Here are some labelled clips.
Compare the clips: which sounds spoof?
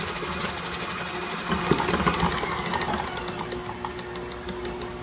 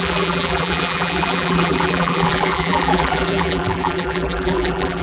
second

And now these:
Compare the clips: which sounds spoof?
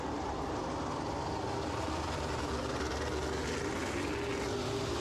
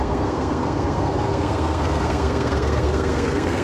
second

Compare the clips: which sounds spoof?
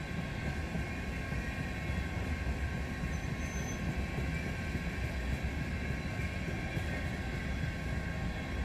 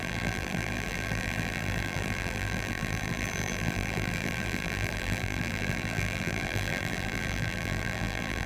second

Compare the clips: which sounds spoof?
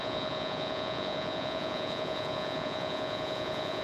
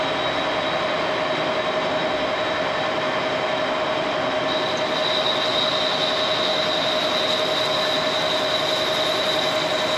first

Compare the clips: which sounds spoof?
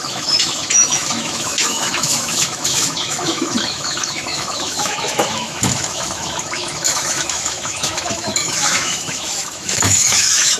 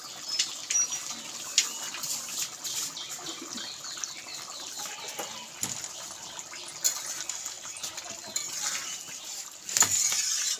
first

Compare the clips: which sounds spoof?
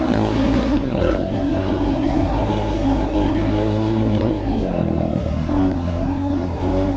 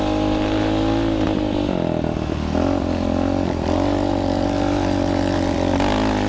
first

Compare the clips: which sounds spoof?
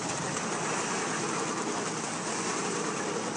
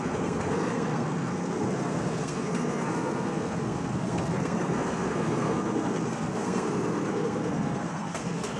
second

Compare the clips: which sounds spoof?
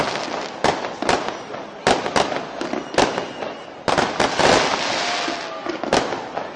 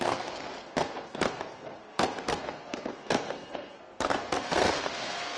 second